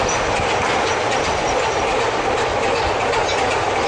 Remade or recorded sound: recorded